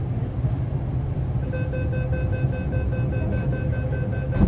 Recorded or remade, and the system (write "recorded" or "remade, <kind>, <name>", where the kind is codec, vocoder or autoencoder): recorded